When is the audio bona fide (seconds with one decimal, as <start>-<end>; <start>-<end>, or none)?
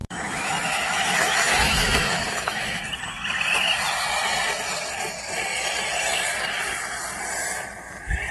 2.8-8.3